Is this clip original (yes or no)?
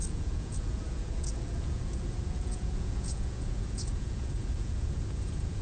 no